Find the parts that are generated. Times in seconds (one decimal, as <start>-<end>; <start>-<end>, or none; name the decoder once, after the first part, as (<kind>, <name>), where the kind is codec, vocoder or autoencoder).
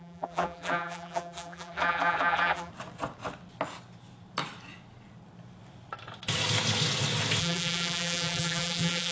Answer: 0.0-2.7 (vocoder, BigVGAN v2); 7.4-9.1